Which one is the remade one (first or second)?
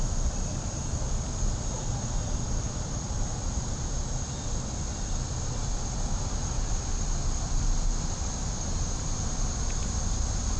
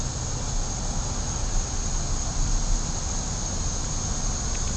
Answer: first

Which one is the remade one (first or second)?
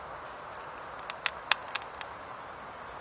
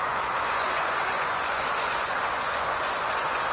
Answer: second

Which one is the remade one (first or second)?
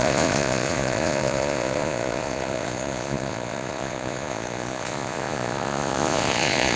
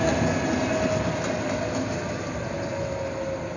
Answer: first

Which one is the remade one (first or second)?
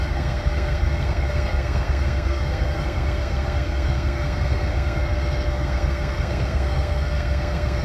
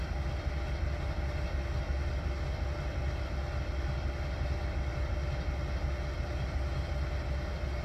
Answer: first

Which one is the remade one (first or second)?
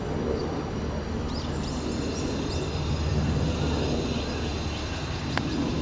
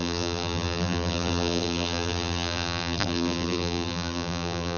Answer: second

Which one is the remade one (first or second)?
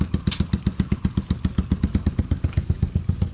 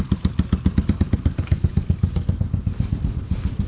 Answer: second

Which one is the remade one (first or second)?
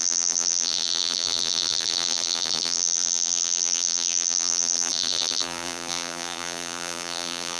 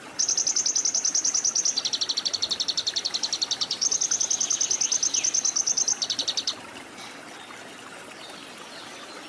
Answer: first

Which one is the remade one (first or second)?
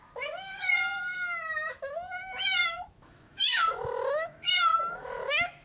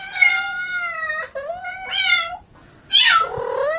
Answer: first